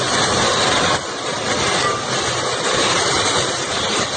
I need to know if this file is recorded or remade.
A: recorded